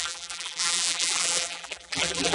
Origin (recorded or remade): remade